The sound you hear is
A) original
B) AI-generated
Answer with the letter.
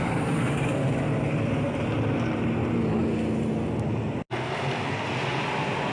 A